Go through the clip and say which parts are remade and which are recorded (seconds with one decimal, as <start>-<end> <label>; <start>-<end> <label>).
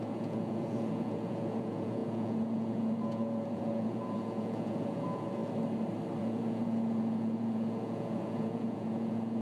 0.0-5.4 remade; 5.4-6.2 recorded; 6.2-9.4 remade